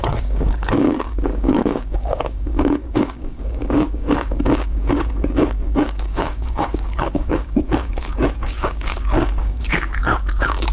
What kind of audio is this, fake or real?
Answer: fake